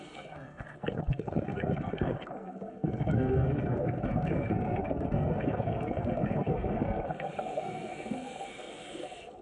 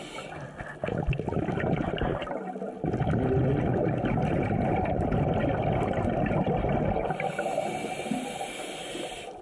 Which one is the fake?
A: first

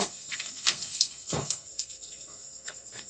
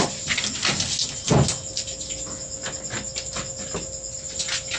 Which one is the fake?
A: first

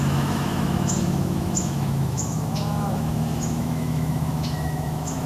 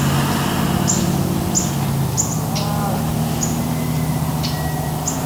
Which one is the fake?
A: first